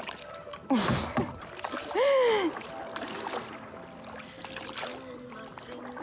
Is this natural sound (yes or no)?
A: yes